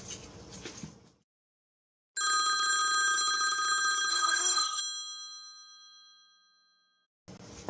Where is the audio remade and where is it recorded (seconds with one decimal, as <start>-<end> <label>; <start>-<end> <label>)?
0.0-4.1 recorded; 4.1-4.8 remade; 4.8-7.7 recorded